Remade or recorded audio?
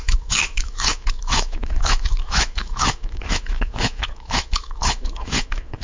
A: remade